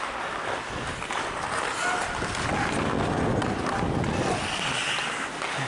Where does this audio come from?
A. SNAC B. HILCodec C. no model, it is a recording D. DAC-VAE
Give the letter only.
C